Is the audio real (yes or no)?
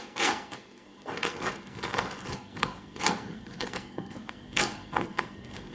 no